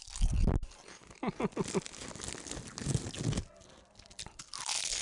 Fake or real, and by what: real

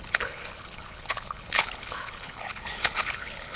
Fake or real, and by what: fake, codec, HILCodec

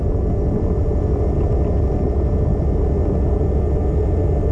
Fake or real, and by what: real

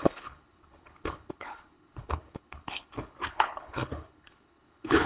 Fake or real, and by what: fake, codec, HILCodec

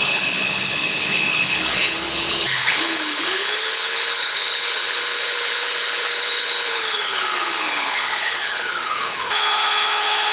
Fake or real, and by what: fake, codec, HILCodec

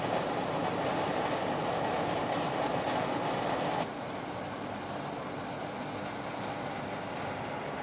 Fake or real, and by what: real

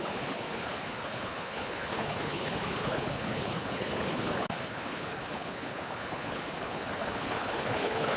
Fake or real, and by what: fake, codec, HILCodec